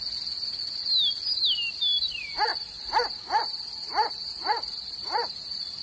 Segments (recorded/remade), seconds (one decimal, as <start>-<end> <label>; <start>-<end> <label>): 0.0-2.5 recorded; 2.5-5.8 remade